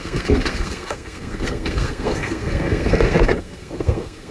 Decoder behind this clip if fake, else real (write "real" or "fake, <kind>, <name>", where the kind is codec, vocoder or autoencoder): fake, codec, SNAC